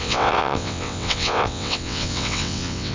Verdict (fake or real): fake